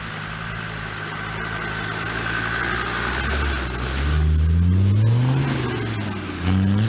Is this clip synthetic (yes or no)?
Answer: no